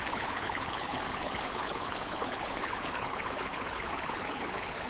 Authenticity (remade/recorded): remade